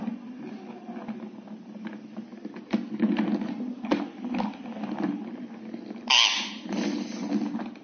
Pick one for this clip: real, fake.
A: real